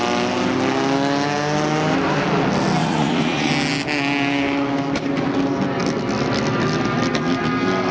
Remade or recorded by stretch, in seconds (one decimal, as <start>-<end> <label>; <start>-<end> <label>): 0.0-2.8 recorded; 2.8-3.5 remade; 3.5-7.9 recorded